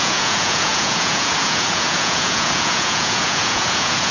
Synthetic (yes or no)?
yes